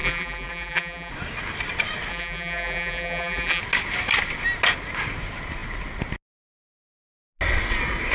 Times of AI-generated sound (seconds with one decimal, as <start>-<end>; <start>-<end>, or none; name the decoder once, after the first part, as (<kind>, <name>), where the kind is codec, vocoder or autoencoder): 0.0-1.1 (vocoder, BigVGAN v2); 2.1-3.6